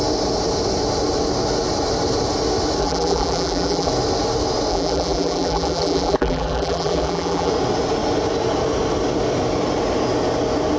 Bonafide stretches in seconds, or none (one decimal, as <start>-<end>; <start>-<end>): 0.0-2.8; 3.9-4.7; 7.5-10.8

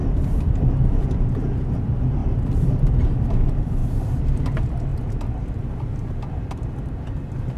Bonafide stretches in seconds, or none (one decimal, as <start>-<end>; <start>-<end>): 1.4-3.8; 4.4-7.6

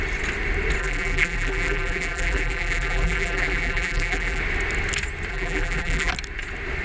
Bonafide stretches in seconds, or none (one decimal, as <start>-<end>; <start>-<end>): 0.0-0.8; 4.4-5.3; 6.1-6.8

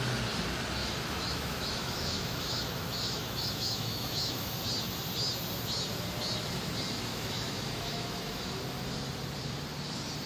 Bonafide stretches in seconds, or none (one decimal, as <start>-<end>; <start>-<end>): 0.0-0.8; 4.6-7.1; 8.5-10.3

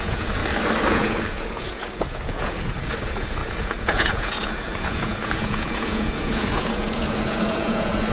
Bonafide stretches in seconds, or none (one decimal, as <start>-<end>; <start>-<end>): 0.4-0.9

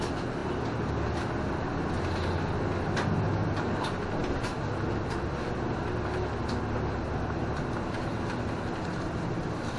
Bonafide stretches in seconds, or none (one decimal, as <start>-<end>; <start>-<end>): 0.0-9.8